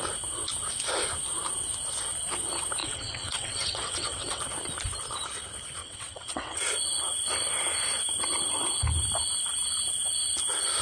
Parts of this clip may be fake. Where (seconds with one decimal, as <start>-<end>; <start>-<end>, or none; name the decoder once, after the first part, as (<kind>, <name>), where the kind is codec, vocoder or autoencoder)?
2.8-4.4 (vocoder, WaveNeXt); 5.8-6.6